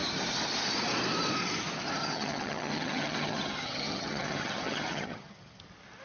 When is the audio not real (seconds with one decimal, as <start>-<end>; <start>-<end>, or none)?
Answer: 2.0-5.6